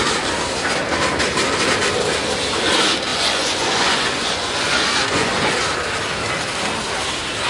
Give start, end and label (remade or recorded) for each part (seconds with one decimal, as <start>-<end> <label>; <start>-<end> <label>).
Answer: 0.0-3.1 recorded; 3.1-5.5 remade; 5.5-7.5 recorded